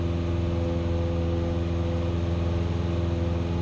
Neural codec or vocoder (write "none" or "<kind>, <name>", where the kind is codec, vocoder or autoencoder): none